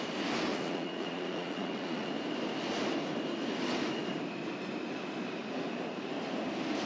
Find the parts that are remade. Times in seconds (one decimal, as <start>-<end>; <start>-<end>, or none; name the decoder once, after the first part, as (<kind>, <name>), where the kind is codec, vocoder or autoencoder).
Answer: 0.5-2.1 (vocoder, Vocos)